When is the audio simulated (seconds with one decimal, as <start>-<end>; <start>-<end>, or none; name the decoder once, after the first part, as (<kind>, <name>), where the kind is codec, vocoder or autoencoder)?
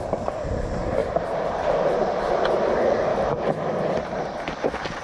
1.0-2.3 (vocoder, BigVGAN v2); 3.1-3.8